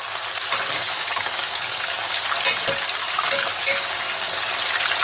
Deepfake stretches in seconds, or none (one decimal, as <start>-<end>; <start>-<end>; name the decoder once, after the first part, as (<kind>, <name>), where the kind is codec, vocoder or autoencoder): 0.7-2.2 (codec, DAC); 3.0-4.5